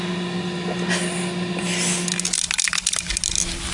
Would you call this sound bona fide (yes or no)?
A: yes